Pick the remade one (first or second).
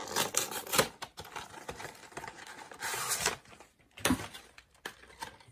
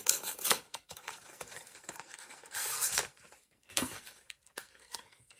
second